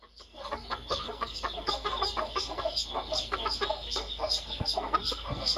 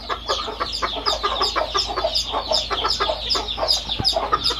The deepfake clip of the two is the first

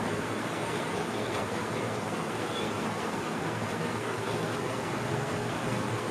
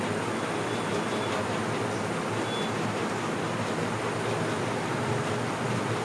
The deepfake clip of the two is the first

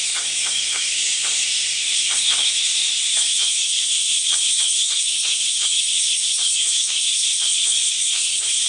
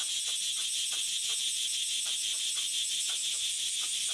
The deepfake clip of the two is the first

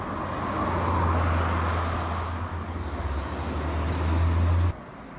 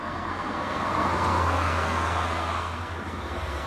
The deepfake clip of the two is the second